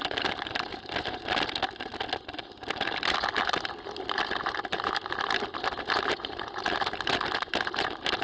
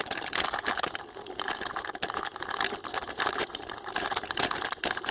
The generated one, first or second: second